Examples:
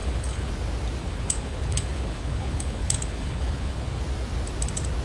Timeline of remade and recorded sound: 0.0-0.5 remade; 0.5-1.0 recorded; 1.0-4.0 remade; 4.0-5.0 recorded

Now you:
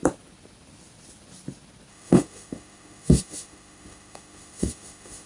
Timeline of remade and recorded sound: 0.0-1.9 recorded; 1.9-5.3 remade